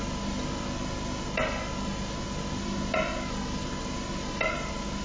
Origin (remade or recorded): recorded